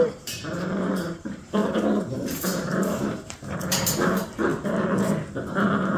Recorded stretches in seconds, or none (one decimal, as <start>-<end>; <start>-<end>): 1.6-2.1; 4.5-5.5